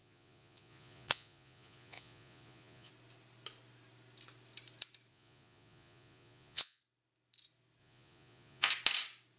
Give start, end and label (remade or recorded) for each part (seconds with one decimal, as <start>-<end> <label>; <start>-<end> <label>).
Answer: 0.0-2.9 remade; 2.9-5.1 recorded; 5.1-6.8 remade; 6.8-7.8 recorded; 7.8-8.7 remade; 8.7-9.4 recorded